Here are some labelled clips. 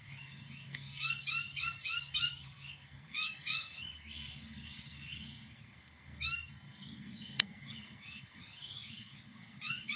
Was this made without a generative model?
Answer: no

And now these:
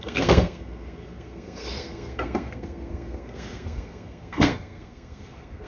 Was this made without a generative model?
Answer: no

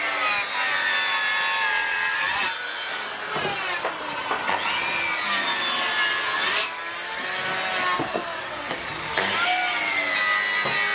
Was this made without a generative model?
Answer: yes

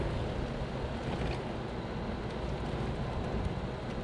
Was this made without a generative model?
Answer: yes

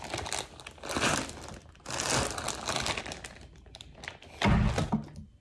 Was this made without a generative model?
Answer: yes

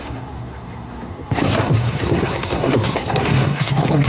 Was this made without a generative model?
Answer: no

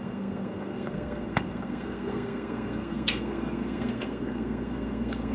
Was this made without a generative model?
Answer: no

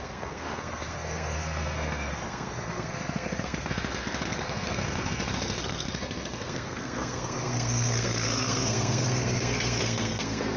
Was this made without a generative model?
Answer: no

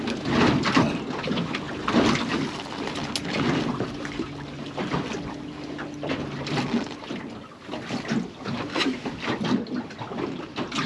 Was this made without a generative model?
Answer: yes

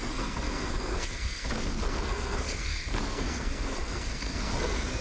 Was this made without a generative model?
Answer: no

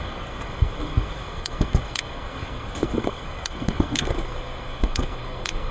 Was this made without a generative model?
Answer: no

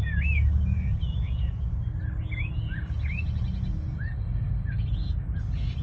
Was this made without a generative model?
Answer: yes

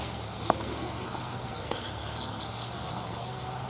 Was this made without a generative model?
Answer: no